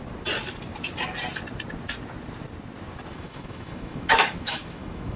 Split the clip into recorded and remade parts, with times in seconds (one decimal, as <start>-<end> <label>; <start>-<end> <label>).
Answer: 0.0-3.1 recorded; 3.1-5.2 remade